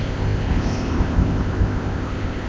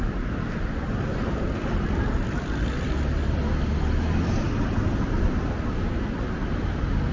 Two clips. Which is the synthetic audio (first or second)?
first